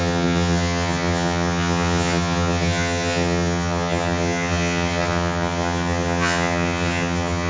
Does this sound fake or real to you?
fake